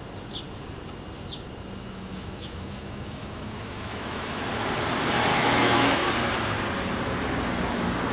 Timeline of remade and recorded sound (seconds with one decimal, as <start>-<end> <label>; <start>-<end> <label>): 0.0-1.8 recorded; 1.8-4.4 remade; 4.4-5.3 recorded; 5.3-6.1 remade; 6.1-8.1 recorded

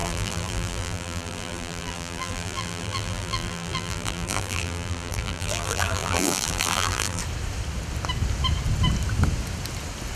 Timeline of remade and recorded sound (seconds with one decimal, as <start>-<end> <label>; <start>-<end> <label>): 0.0-7.2 remade; 7.2-10.2 recorded

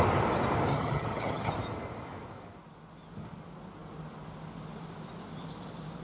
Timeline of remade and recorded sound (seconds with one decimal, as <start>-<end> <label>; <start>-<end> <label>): 0.0-0.7 recorded; 0.7-1.5 remade; 1.5-6.0 recorded